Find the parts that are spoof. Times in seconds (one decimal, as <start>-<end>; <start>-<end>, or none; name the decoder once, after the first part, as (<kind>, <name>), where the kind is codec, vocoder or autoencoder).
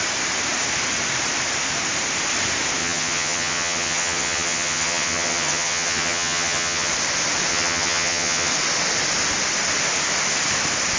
2.8-6.9 (vocoder, HiFi-GAN); 7.5-8.5